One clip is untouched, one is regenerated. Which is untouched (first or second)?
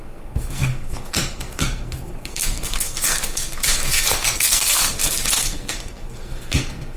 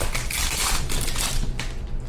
second